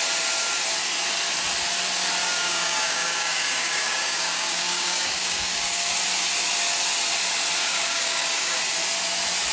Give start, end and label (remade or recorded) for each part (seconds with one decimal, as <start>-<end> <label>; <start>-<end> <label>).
0.0-2.2 recorded; 2.2-5.9 remade; 5.9-7.6 recorded; 7.6-8.6 remade; 8.6-9.5 recorded